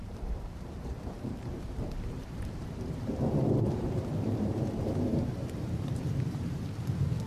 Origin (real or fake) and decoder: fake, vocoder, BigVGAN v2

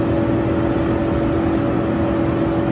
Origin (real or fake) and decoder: real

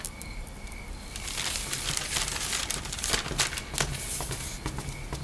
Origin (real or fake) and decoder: real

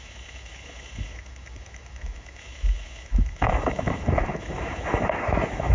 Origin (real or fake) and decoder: fake, autoencoder, DAC-VAE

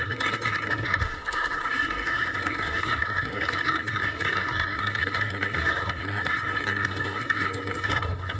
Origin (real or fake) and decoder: fake, codec, SNAC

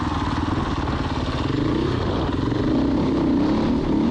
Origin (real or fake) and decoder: real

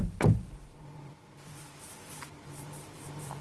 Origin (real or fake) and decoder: fake, vocoder, BigVGAN v2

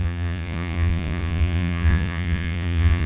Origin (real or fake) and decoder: fake, vocoder, Vocos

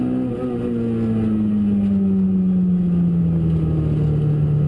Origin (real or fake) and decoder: real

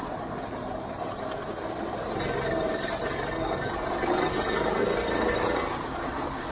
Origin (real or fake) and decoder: real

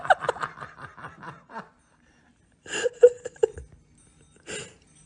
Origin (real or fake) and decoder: real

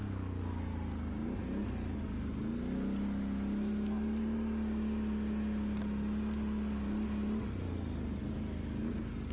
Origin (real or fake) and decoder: real